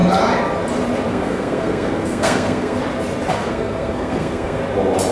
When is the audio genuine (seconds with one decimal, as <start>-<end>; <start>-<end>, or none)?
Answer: 0.0-1.1; 2.8-3.3; 4.6-5.1

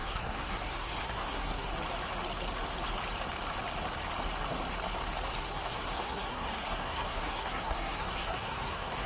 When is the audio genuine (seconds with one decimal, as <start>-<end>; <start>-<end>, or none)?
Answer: 1.7-5.4

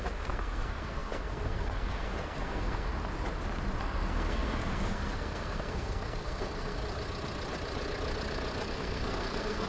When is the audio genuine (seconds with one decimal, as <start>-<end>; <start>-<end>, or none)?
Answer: 2.9-3.8; 6.8-8.7

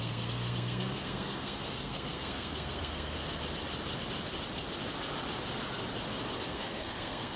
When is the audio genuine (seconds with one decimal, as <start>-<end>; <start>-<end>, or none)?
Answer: 3.2-6.4

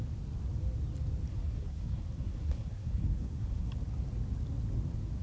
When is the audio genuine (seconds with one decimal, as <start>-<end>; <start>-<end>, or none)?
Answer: 0.0-1.3; 3.7-5.2

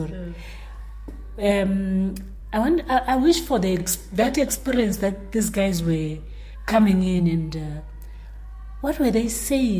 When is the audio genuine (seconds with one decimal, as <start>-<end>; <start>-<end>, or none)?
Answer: 0.0-0.8; 1.5-3.8; 7.2-9.8